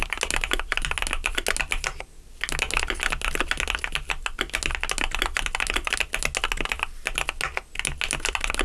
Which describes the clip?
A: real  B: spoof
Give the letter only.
A